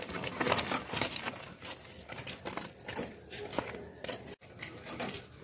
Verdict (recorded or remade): remade